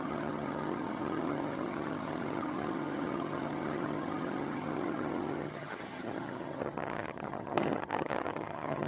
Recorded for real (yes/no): no